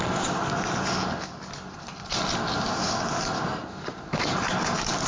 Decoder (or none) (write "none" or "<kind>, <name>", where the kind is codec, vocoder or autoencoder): none